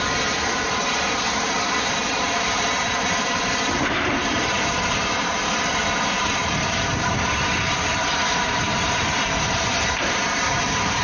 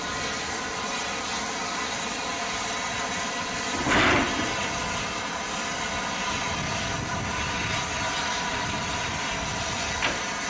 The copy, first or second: first